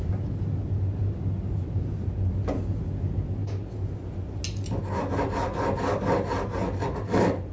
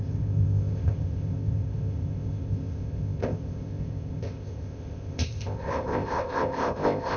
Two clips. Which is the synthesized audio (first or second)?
second